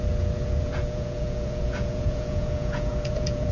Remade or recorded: remade